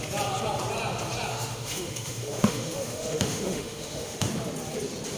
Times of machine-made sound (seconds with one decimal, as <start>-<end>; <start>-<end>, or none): 1.3-4.3